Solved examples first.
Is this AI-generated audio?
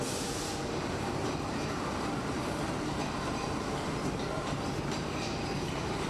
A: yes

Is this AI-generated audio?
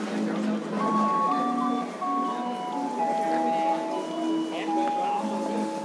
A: no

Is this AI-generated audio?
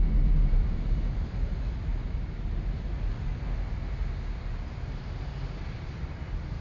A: no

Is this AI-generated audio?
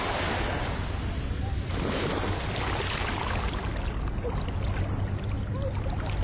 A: no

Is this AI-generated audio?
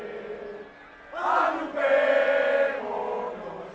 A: no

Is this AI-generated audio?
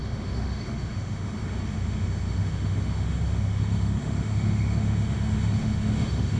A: yes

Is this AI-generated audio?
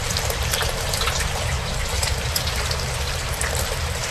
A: yes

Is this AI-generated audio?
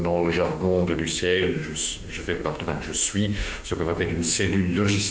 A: yes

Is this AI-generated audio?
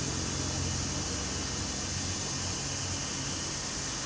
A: no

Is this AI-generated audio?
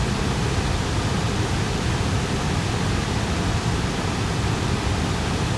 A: no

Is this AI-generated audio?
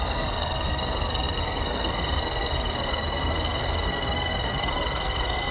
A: yes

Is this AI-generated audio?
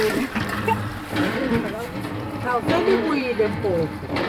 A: yes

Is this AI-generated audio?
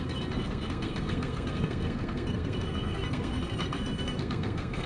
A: yes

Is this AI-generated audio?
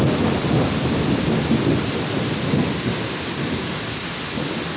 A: no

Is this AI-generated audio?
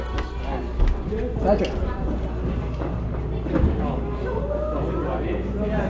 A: no